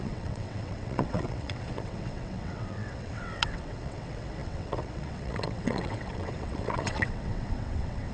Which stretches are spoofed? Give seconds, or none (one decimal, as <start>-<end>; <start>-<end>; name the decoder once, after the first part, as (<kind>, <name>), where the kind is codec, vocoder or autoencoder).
0.0-8.1 (vocoder, WaveNeXt)